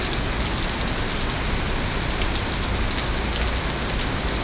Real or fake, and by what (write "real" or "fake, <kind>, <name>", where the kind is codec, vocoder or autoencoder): real